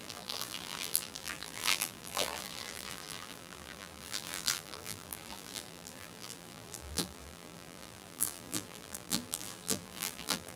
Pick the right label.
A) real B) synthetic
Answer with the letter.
B